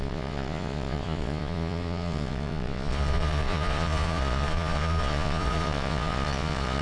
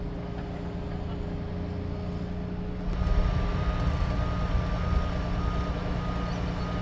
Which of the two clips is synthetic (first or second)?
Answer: first